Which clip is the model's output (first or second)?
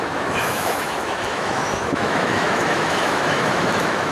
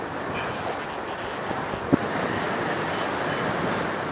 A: first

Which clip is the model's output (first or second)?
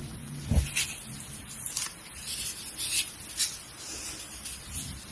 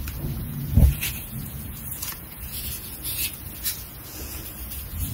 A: second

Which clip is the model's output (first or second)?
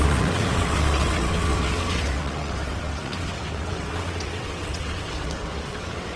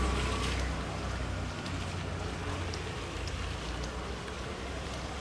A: first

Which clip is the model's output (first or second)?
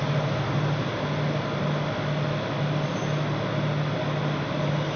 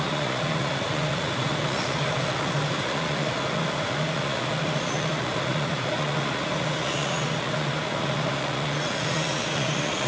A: second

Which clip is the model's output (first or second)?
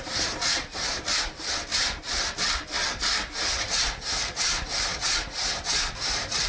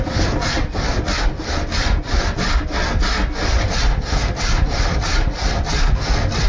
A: first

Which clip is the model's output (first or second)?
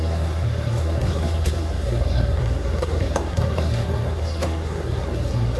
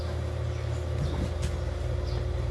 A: first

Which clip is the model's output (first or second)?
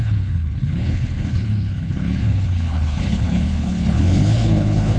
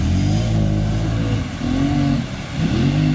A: first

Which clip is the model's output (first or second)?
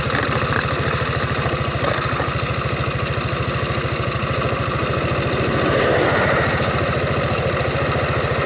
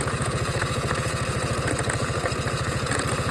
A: second